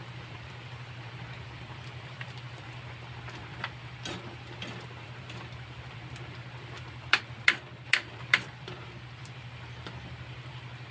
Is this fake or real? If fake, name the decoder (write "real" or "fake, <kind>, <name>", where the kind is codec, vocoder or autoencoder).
fake, vocoder, BigVGAN v2